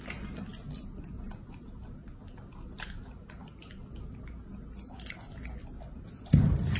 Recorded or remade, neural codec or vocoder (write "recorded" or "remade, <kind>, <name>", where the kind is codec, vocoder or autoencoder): recorded